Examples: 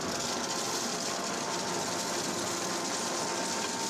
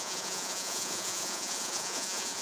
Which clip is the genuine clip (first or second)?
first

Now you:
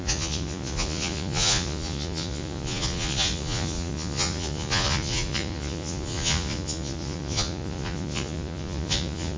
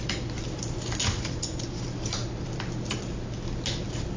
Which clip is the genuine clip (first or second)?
second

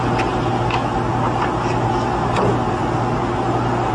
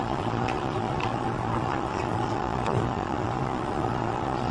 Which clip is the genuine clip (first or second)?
first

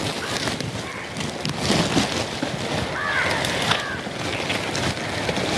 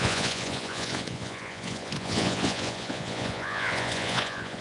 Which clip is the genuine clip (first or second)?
first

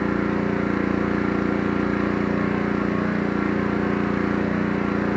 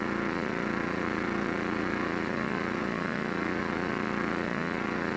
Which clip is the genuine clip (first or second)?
first